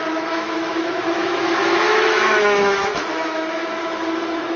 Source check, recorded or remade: remade